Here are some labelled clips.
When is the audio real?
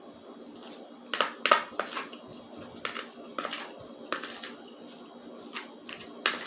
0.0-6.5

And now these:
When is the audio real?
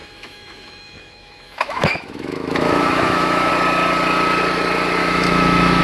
3.5-5.0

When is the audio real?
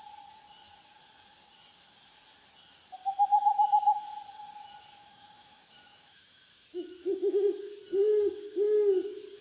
0.0-5.0; 7.8-9.4